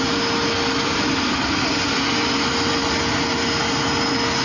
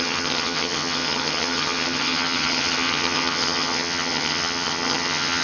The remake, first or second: second